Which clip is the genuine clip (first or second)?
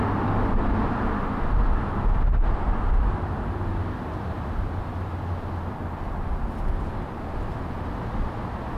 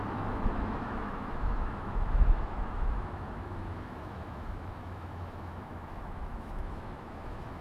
first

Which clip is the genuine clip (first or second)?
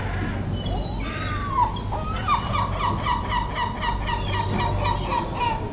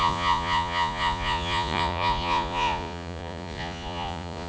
first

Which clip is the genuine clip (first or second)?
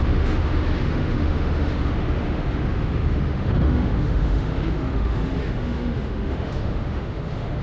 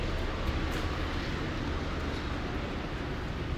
second